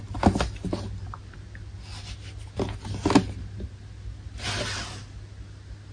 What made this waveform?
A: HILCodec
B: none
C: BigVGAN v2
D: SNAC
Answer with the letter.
B